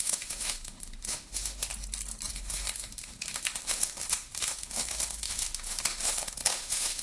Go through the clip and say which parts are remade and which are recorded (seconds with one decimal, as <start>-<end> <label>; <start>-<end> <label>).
0.0-1.7 remade; 1.7-2.3 recorded; 2.3-7.0 remade